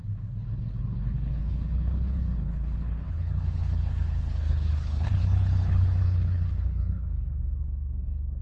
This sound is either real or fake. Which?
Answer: fake